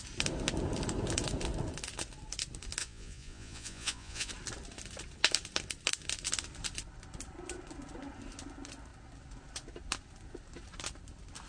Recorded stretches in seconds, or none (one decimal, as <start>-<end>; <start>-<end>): 0.0-2.8; 4.3-11.5